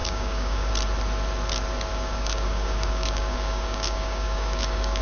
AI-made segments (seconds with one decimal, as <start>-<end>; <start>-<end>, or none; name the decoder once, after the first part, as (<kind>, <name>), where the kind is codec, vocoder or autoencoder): 0.0-0.7 (codec, DAC); 1.9-5.0